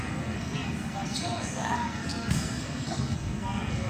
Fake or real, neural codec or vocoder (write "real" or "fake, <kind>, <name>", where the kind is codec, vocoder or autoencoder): fake, codec, SNAC